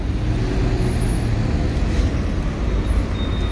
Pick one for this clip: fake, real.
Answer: real